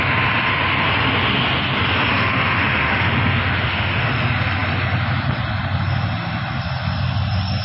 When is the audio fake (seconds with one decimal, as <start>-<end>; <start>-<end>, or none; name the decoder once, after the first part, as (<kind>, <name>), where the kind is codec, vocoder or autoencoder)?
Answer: 2.1-4.1 (autoencoder, DAC-VAE)